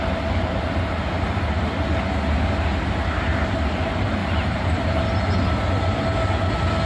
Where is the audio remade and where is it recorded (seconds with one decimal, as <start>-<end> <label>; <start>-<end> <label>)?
0.0-4.2 recorded; 4.2-5.0 remade; 5.0-6.9 recorded

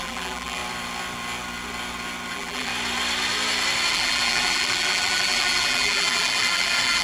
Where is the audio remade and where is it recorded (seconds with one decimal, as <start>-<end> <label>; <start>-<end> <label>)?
0.0-0.6 remade; 0.6-2.3 recorded; 2.3-2.7 remade; 2.7-3.9 recorded; 3.9-7.0 remade

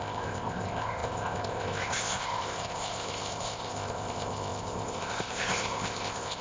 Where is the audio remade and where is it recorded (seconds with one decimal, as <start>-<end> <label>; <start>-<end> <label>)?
0.0-6.4 remade

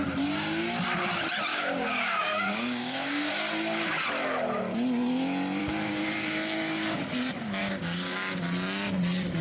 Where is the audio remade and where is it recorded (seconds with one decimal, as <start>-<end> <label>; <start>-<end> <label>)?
0.0-1.5 recorded; 1.5-3.3 remade; 3.3-5.6 recorded; 5.6-7.0 remade; 7.0-7.6 recorded; 7.6-8.4 remade; 8.4-9.4 recorded

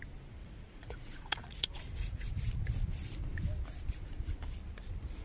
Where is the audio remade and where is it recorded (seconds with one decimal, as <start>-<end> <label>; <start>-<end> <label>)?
0.0-0.4 recorded; 0.4-2.3 remade; 2.3-5.2 recorded

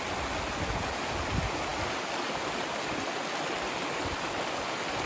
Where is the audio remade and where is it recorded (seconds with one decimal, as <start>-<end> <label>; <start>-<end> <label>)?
0.0-5.1 recorded